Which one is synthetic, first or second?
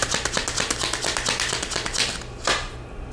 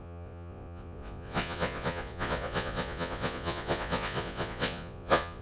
second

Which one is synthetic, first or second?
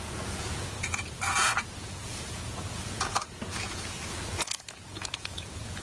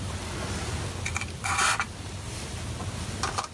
first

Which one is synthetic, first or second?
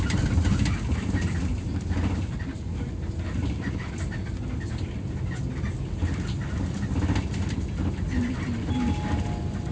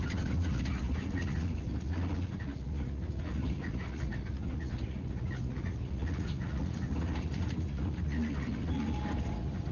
second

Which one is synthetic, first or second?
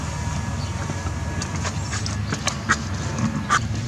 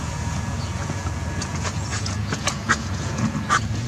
second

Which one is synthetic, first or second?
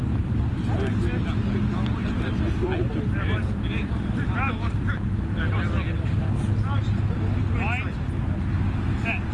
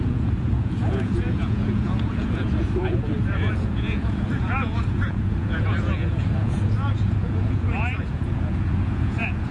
second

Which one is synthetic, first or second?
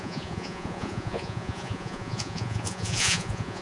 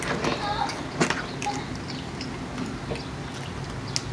first